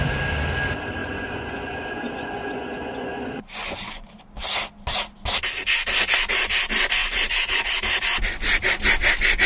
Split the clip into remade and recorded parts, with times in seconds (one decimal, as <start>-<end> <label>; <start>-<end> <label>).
0.0-1.0 recorded; 1.0-4.1 remade; 4.1-7.0 recorded; 7.0-7.6 remade; 7.6-9.5 recorded